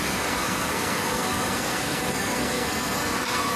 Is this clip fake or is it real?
fake